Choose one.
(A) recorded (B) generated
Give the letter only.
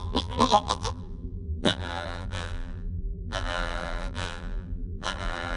B